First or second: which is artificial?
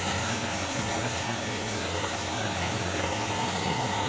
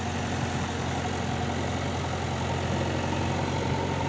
first